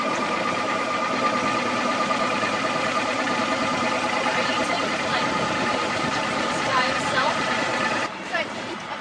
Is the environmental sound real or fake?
fake